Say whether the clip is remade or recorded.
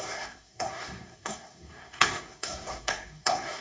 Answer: remade